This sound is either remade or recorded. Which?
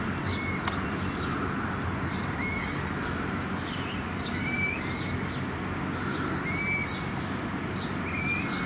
recorded